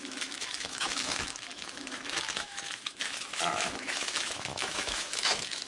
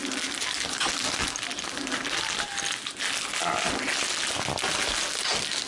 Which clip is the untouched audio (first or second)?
second